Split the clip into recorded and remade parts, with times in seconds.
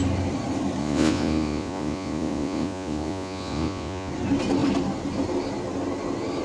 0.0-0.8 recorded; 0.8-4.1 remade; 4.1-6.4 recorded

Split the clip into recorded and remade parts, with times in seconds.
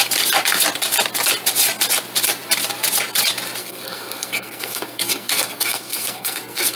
0.0-3.6 recorded; 3.6-6.8 remade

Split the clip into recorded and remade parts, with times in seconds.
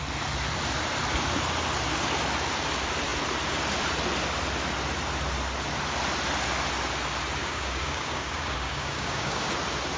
0.0-7.4 recorded; 7.4-9.5 remade; 9.5-10.0 recorded